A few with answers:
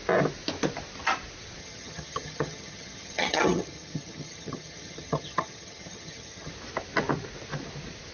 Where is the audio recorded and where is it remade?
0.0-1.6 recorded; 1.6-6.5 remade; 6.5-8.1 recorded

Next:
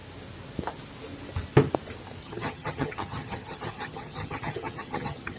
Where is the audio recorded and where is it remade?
0.0-2.2 recorded; 2.2-5.4 remade

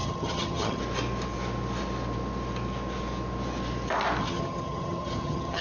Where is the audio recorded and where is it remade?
0.0-0.8 remade; 0.8-4.2 recorded; 4.2-5.6 remade

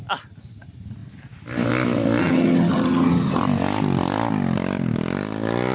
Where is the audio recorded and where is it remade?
0.0-2.2 recorded; 2.2-3.4 remade; 3.4-5.7 recorded